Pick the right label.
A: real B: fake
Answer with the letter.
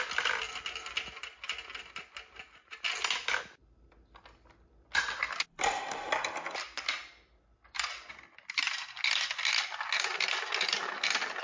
A